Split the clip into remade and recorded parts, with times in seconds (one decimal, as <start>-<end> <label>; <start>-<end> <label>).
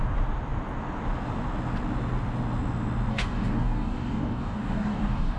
0.0-3.1 recorded; 3.1-5.4 remade